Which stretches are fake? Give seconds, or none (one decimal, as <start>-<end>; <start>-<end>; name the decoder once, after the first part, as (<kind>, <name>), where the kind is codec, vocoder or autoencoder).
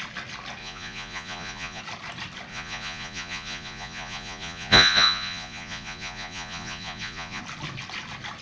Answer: 0.6-1.8 (vocoder, Vocos); 2.5-7.4